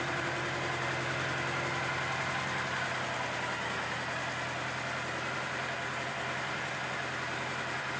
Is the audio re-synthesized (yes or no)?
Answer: no